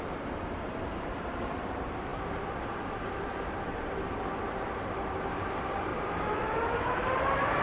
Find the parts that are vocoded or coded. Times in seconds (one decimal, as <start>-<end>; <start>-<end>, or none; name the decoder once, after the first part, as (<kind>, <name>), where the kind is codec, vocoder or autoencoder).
0.0-5.9 (vocoder, BigVGAN v2); 6.5-7.6

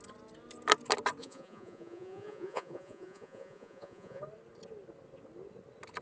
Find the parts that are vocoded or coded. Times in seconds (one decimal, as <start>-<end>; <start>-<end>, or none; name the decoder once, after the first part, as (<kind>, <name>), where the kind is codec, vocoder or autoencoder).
1.2-4.2 (vocoder, Vocos)

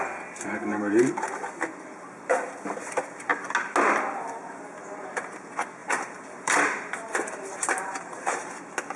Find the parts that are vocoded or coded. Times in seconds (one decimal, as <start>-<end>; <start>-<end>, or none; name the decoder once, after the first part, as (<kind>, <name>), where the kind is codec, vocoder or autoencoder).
0.7-1.6 (vocoder, BigVGAN v2); 5.8-8.5

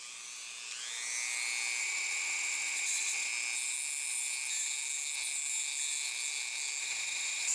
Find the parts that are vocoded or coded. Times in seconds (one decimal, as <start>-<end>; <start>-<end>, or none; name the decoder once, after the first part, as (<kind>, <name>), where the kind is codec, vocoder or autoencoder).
1.8-3.3 (vocoder, WaveNeXt); 6.8-7.5

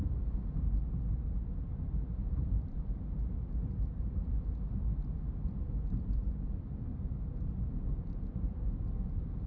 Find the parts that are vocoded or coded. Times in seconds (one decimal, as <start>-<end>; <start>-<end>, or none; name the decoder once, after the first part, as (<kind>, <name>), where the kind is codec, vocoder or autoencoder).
2.2-4.5 (vocoder, BigVGAN v2)

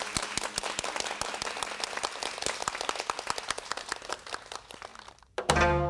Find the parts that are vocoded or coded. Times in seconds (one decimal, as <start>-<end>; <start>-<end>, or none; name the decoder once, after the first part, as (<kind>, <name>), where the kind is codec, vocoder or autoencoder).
none

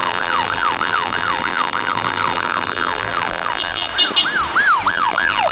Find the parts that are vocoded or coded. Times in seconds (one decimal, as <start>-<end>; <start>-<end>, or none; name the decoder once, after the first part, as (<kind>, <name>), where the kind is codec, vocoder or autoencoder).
0.0-3.9 (vocoder, BigVGAN v2); 4.9-5.5